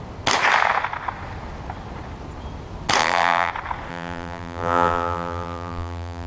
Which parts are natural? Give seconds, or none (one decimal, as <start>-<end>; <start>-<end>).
0.0-3.0; 3.5-3.9